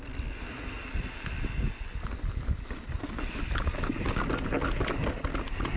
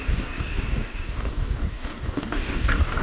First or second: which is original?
first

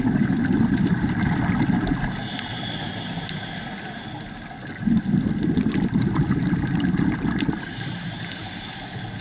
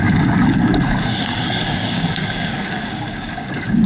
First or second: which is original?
first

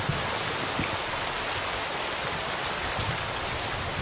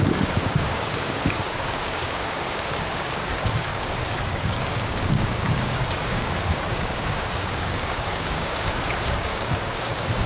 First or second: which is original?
first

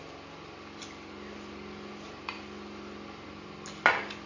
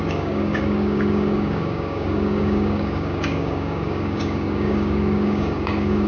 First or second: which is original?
first